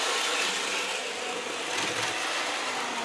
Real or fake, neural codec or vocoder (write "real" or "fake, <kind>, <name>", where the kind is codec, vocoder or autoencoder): real